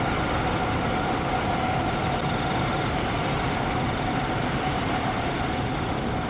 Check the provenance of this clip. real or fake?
real